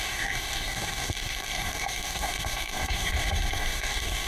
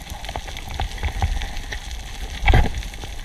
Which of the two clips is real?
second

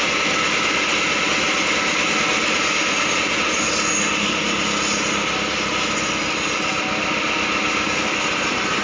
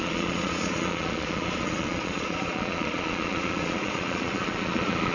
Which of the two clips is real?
first